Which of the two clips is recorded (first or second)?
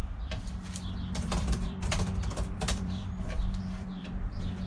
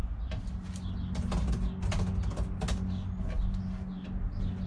second